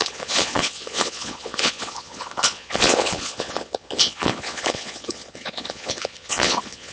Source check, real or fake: fake